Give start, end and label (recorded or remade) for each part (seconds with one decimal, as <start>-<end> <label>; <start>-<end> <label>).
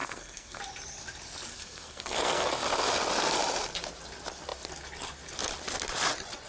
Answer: 0.0-0.6 remade; 0.6-1.5 recorded; 1.5-2.5 remade; 2.5-6.5 recorded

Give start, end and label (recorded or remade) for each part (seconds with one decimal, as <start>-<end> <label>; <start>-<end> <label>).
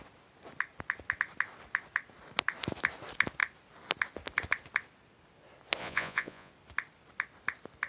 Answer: 0.0-5.8 recorded; 5.8-6.5 remade; 6.5-7.9 recorded